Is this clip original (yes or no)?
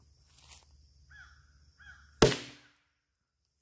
yes